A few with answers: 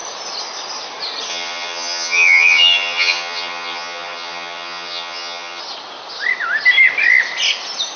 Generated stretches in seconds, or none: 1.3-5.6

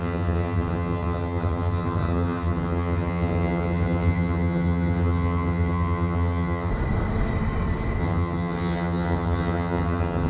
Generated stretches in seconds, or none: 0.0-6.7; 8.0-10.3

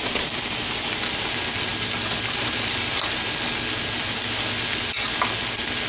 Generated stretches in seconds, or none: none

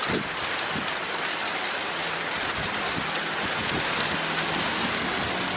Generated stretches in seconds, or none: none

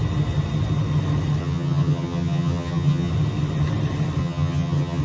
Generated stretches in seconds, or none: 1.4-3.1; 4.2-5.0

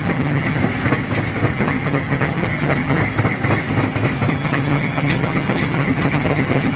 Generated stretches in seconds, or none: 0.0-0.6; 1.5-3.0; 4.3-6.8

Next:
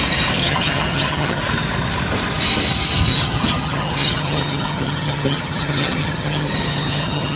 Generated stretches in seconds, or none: 0.4-1.4; 3.1-7.4

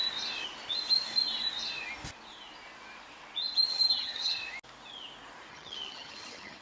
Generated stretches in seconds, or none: 3.7-4.4; 5.5-6.6